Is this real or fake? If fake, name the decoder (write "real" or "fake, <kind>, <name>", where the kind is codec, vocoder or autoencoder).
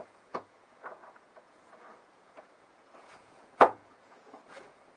fake, vocoder, Vocos